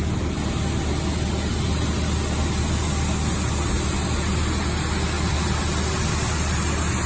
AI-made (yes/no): no